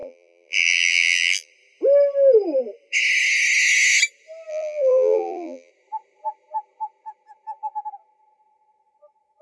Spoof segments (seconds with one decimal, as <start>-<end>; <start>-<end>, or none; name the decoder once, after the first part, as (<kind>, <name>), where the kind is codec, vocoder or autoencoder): 0.0-1.5 (vocoder, BigVGAN v2); 4.5-5.7